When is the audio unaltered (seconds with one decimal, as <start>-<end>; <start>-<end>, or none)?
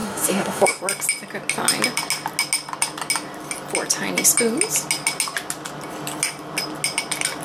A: 0.8-7.4